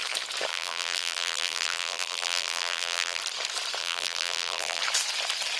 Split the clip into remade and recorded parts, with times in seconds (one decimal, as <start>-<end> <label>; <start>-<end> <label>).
0.0-0.5 recorded; 0.5-3.2 remade; 3.2-3.8 recorded; 3.8-4.8 remade; 4.8-5.6 recorded